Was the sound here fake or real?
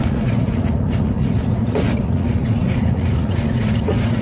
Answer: fake